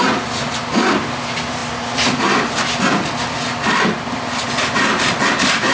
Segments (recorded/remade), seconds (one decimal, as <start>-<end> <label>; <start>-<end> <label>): 0.0-5.7 recorded